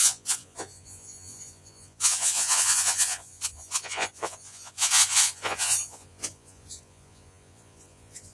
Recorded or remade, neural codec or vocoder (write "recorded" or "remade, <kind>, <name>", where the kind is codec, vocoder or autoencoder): remade, vocoder, Vocos